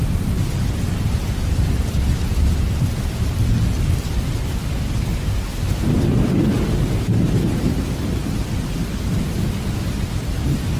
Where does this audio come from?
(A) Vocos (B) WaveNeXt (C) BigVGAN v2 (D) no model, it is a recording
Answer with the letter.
D